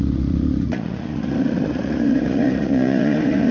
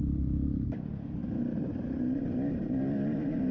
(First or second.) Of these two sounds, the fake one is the first